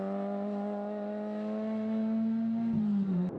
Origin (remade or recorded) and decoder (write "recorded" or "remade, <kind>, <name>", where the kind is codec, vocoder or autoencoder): recorded